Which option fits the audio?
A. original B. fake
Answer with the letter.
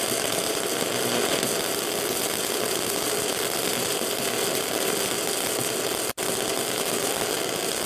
A